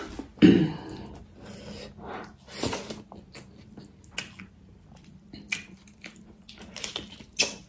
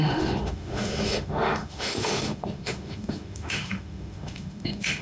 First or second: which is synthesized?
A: second